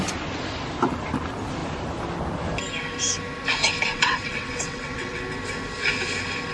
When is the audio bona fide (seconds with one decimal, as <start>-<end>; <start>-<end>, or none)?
0.0-3.9; 5.2-6.5